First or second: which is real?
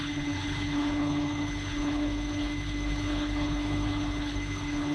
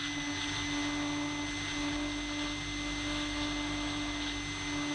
second